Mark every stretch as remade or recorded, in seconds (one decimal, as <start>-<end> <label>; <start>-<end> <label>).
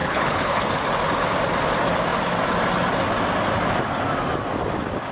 0.0-0.6 remade; 0.6-5.1 recorded